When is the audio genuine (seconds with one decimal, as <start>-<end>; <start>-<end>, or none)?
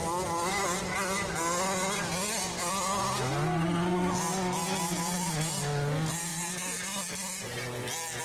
0.0-8.2